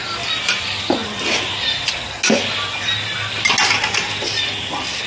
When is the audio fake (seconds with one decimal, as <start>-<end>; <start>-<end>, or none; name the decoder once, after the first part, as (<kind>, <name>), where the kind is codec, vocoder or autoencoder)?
none